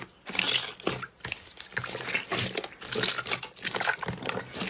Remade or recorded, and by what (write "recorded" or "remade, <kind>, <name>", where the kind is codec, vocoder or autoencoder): recorded